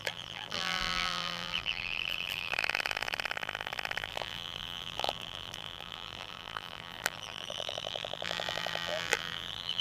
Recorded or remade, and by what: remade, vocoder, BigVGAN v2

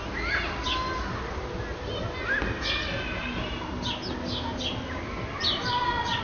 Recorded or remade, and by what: recorded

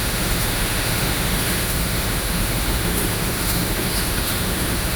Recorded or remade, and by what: remade, autoencoder, DAC-VAE